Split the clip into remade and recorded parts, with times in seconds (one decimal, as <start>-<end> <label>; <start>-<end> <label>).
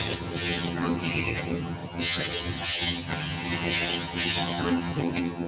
0.0-5.5 remade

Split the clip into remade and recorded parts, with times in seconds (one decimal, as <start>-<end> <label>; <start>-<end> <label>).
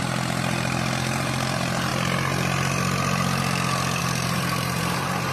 0.0-1.9 remade; 1.9-4.0 recorded; 4.0-5.3 remade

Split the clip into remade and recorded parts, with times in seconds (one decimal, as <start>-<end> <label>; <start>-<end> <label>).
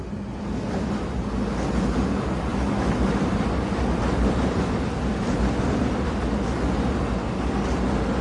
0.0-2.5 recorded; 2.5-6.2 remade; 6.2-8.2 recorded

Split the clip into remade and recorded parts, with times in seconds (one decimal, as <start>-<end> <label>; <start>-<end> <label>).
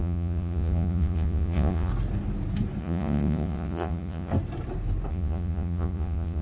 0.0-1.9 remade; 1.9-2.8 recorded; 2.8-4.3 remade; 4.3-5.1 recorded; 5.1-6.4 remade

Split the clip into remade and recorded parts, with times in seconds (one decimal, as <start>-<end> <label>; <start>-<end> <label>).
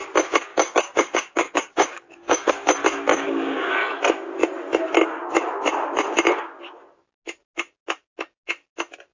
0.0-0.5 recorded; 0.5-2.5 remade; 2.5-3.1 recorded; 3.1-3.7 remade; 3.7-9.1 recorded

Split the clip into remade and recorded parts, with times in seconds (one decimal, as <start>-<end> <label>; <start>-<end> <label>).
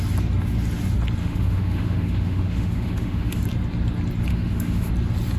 0.0-1.2 recorded; 1.2-3.4 remade; 3.4-4.3 recorded; 4.3-4.9 remade; 4.9-5.4 recorded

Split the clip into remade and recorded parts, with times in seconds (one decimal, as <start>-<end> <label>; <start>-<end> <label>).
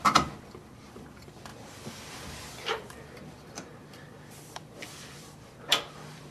0.0-6.3 remade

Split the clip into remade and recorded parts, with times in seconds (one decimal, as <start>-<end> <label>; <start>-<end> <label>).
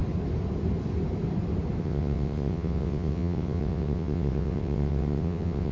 0.0-1.8 recorded; 1.8-5.7 remade